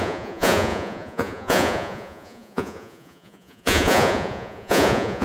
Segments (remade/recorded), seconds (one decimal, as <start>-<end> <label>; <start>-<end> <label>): 0.0-5.2 remade